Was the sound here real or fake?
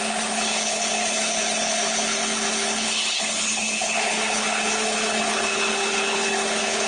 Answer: fake